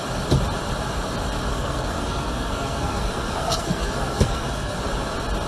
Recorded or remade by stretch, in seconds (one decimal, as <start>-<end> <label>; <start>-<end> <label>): 0.0-1.5 recorded; 1.5-4.8 remade; 4.8-5.5 recorded